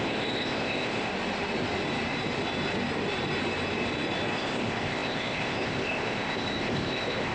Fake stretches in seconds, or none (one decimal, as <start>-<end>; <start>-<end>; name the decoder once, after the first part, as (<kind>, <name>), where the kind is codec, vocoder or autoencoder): 0.0-1.1 (codec, ZipCodec); 4.3-7.3